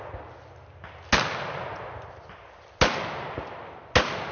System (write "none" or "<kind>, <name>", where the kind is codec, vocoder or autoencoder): none